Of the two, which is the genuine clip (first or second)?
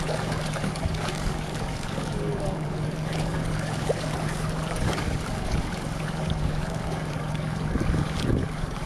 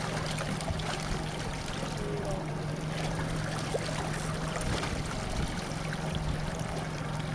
second